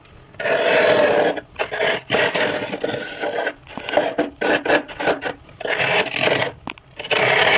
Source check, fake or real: real